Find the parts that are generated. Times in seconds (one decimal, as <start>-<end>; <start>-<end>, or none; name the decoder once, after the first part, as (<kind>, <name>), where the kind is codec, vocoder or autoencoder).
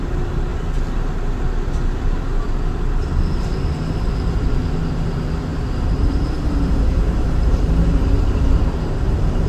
0.0-0.5 (vocoder, BigVGAN v2); 4.9-9.5